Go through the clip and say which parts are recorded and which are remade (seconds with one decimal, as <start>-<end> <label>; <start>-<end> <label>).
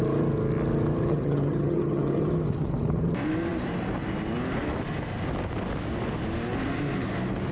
0.0-1.1 recorded; 1.1-2.3 remade; 2.3-7.5 recorded